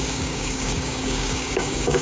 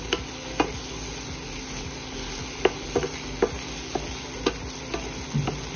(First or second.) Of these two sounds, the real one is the second